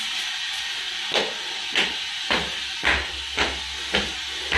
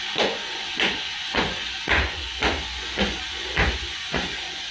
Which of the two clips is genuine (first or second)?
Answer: first